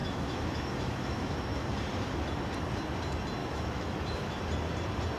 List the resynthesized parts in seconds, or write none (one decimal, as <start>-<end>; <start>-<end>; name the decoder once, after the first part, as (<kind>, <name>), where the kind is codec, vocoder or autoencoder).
0.0-1.7 (autoencoder, DAC-VAE); 3.4-4.4